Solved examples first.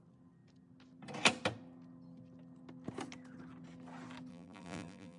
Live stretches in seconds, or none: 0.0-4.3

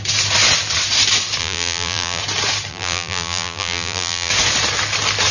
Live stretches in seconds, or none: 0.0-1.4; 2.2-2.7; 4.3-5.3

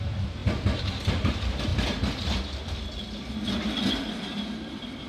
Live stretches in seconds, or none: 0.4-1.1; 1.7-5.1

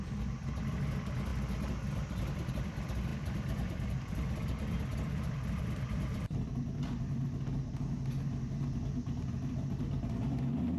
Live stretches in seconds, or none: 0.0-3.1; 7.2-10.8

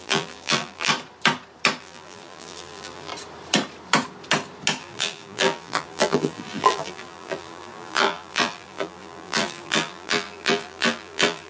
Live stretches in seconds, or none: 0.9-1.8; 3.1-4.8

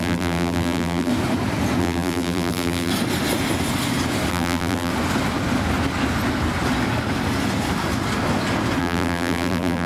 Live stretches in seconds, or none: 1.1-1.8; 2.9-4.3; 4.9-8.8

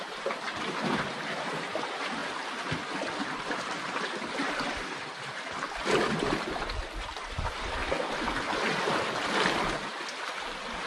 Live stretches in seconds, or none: 7.8-10.9